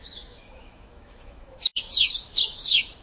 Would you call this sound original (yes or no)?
no